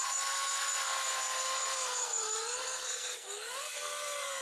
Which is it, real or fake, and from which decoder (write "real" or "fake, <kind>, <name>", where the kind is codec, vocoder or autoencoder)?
fake, codec, SNAC